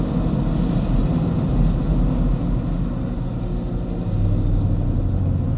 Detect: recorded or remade recorded